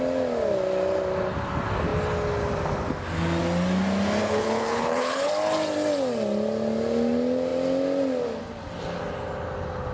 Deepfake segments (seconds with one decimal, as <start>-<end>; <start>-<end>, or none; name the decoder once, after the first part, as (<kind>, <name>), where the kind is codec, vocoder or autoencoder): 4.2-5.3 (codec, HILCodec)